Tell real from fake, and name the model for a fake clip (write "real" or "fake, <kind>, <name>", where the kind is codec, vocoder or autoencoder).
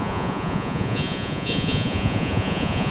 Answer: fake, vocoder, Vocos